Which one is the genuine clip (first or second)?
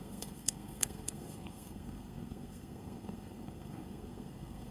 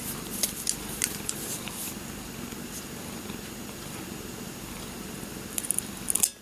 second